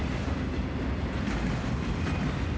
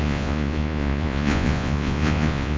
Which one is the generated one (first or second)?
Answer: second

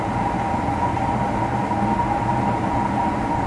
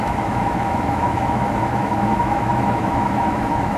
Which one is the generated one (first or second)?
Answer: second